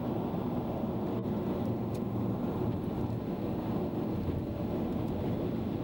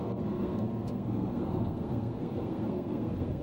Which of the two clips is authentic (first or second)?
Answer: first